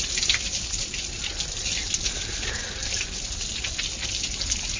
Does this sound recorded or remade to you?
recorded